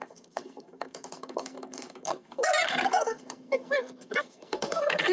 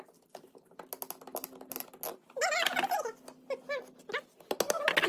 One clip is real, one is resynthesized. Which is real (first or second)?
second